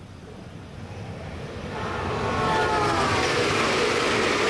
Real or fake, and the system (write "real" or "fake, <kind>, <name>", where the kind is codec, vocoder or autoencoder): real